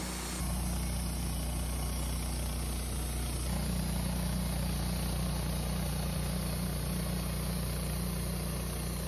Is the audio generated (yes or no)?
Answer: no